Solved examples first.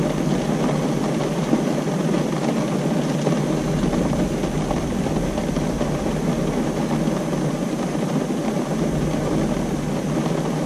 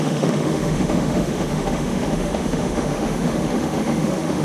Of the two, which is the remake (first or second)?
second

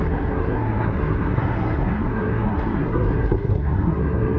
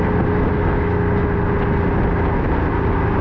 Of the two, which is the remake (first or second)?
first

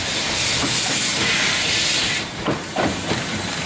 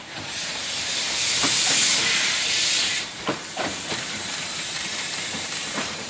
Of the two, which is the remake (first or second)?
second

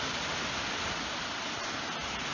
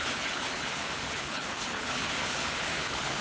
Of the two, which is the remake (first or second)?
second